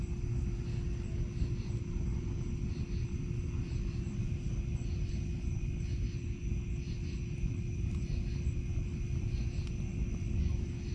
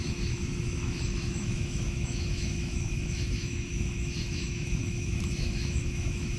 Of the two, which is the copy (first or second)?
second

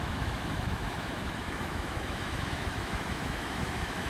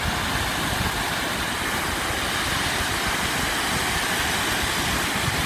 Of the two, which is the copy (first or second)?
first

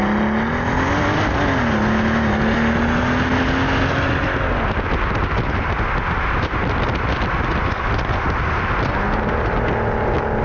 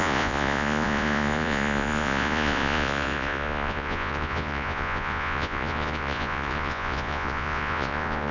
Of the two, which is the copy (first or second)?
second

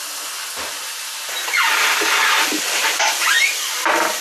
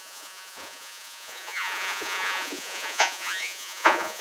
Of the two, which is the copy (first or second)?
second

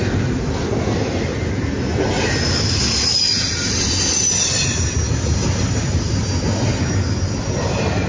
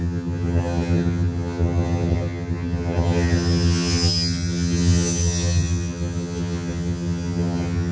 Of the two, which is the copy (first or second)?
second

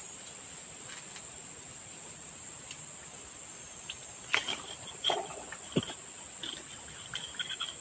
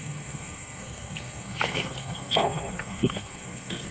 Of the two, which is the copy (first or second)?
second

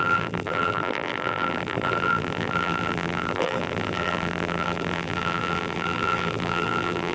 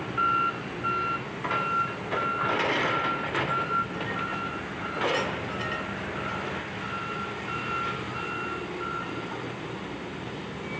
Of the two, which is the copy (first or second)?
first